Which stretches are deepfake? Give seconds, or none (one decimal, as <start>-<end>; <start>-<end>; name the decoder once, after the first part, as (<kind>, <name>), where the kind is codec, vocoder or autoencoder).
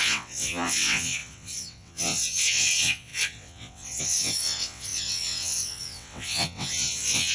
0.0-7.3 (vocoder, WaveNeXt)